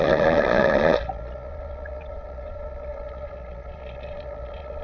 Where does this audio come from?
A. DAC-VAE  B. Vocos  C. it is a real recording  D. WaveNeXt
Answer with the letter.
B